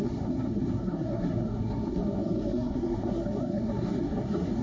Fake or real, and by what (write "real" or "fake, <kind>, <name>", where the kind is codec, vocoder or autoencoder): fake, codec, SNAC